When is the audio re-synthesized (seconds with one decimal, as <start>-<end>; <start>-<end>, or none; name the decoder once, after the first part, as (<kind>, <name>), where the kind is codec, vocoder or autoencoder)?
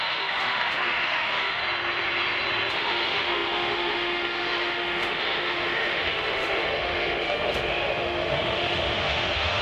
0.0-1.6 (autoencoder, DAC-VAE); 2.7-9.6